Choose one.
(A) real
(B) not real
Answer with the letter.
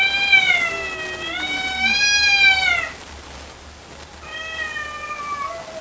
A